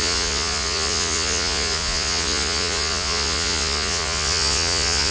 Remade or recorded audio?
remade